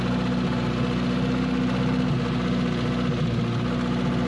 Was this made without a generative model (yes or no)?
yes